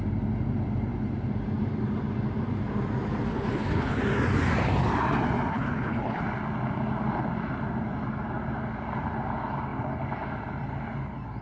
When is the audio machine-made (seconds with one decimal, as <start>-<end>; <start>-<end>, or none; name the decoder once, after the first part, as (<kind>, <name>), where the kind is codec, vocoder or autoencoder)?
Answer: 3.3-4.0 (codec, HILCodec); 5.5-6.2